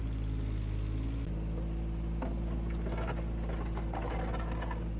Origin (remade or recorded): recorded